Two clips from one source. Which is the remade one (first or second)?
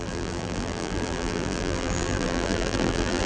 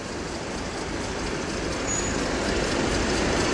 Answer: first